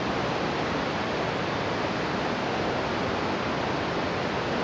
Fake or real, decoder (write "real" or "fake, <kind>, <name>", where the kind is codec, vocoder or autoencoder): real